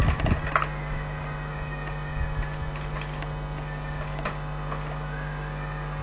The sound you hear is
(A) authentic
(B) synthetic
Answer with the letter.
A